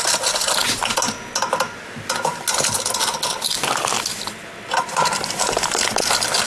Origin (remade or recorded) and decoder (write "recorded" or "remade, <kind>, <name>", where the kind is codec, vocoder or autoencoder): recorded